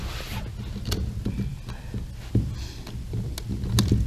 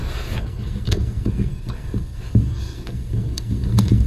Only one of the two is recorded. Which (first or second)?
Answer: first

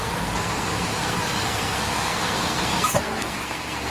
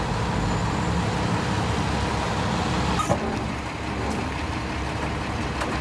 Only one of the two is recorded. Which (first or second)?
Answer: second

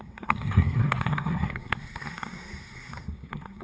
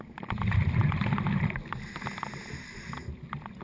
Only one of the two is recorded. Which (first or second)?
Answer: second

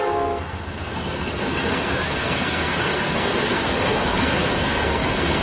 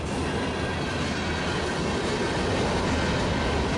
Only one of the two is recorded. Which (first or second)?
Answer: second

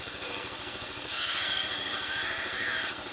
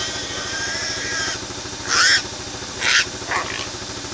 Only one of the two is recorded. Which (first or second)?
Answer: second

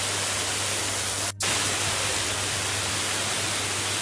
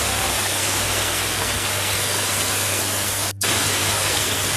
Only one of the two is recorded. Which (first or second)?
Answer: first